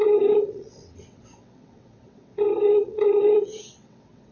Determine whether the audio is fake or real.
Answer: fake